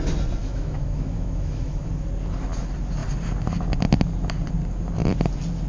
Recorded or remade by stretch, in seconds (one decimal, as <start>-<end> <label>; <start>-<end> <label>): 0.0-0.4 recorded; 0.4-1.9 remade; 1.9-5.7 recorded

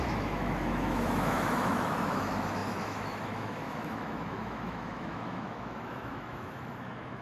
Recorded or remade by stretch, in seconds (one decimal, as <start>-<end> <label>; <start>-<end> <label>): 0.0-7.2 remade

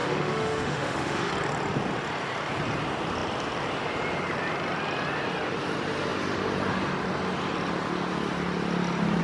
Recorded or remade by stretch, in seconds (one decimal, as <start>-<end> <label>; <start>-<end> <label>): 0.0-1.3 remade; 1.3-9.2 recorded

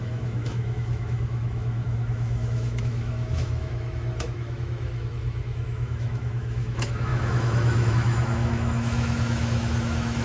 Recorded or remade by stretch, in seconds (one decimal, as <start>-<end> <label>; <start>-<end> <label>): 0.0-10.2 remade